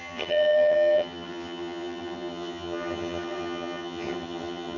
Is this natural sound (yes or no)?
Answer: no